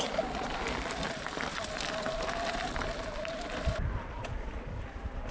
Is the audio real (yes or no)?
yes